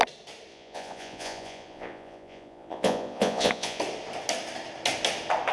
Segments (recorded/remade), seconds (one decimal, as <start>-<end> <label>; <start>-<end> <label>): 0.0-0.5 recorded; 0.5-3.8 remade; 3.8-5.5 recorded

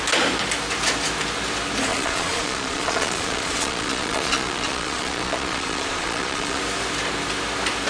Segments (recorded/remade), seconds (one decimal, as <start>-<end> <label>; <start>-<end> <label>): 0.0-1.9 recorded; 1.9-6.6 remade; 6.6-7.9 recorded

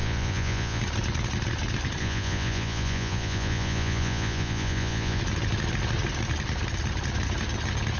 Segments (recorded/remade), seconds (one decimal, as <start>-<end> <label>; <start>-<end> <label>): 0.0-0.8 remade; 0.8-2.0 recorded; 2.0-5.2 remade; 5.2-8.0 recorded

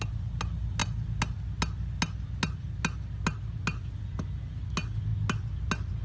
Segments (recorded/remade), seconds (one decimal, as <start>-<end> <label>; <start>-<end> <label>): 0.0-6.0 recorded